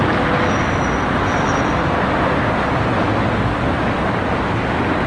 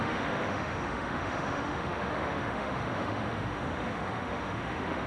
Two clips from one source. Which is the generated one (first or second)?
second